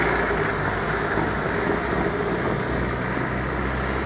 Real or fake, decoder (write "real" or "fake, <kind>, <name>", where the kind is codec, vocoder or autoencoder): real